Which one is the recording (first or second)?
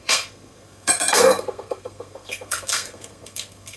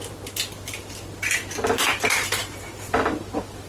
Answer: second